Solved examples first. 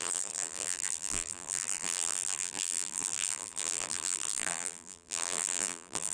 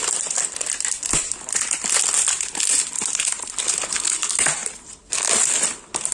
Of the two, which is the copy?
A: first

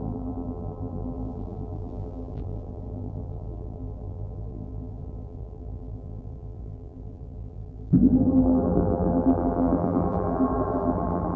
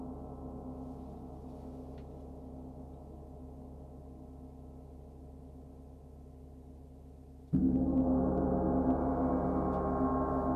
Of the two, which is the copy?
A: first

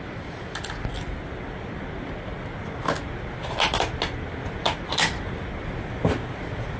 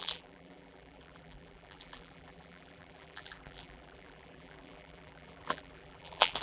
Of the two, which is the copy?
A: second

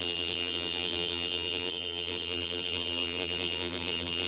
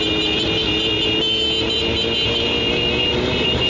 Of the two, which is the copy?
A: first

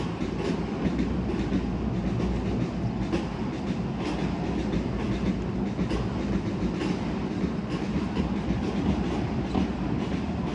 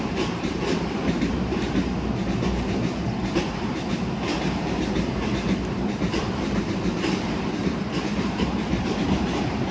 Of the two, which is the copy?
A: second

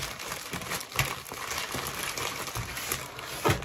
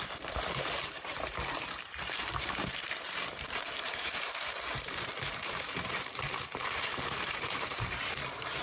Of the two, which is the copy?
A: second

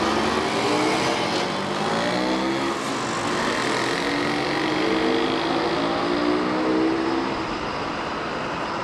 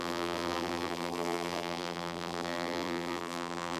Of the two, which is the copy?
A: second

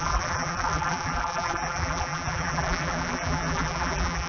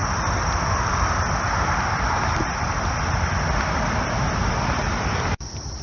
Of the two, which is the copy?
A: first